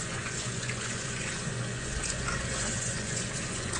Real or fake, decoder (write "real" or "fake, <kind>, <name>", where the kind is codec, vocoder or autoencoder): fake, vocoder, Vocos